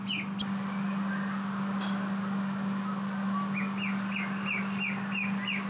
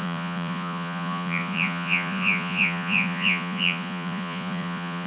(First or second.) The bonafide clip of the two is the first